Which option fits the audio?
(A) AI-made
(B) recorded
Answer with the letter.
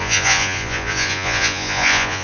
A